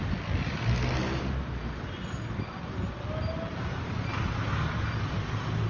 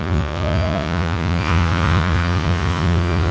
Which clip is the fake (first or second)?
second